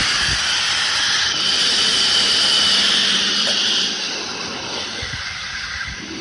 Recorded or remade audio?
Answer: remade